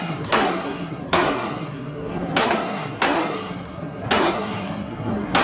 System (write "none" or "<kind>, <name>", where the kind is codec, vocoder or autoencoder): codec, SNAC